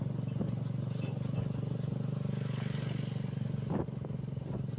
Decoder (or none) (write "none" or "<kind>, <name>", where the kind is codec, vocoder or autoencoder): none